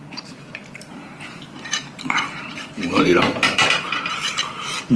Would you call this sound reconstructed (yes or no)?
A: yes